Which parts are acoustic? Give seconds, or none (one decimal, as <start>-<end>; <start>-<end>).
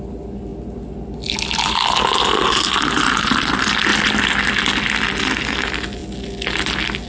0.0-7.1